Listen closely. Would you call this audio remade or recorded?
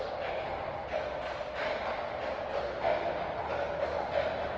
recorded